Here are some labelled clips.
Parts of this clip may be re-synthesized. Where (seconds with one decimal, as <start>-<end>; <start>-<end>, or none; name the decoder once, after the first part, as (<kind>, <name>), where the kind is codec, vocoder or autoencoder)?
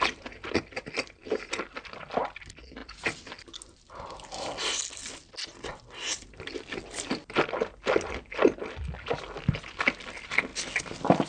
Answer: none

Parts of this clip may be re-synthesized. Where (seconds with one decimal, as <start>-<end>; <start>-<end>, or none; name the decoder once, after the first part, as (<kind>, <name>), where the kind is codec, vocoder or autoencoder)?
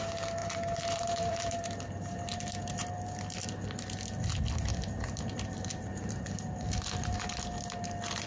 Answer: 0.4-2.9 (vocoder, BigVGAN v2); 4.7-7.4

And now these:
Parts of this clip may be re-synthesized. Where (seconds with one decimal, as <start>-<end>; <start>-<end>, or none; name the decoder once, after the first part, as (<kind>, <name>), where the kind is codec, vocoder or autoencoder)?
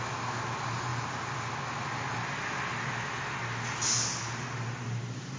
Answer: none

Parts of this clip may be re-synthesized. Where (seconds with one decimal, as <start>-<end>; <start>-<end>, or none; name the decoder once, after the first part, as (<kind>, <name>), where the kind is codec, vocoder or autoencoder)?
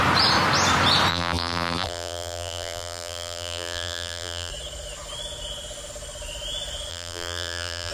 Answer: 1.1-4.5 (vocoder, BigVGAN v2); 6.9-7.9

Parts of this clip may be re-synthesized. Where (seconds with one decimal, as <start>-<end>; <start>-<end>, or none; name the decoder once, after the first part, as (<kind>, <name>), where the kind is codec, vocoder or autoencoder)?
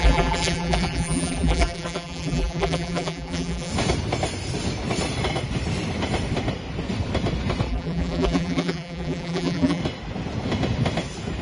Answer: 0.0-3.7 (vocoder, BigVGAN v2); 7.7-9.8